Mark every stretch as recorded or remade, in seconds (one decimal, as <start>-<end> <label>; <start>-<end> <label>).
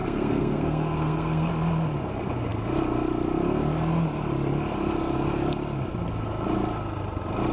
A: 0.0-1.5 remade; 1.5-7.5 recorded